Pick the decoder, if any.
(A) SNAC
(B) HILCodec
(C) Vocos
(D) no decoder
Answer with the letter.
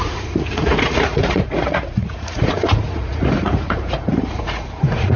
C